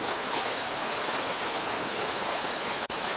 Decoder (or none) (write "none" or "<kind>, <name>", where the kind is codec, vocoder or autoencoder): codec, HILCodec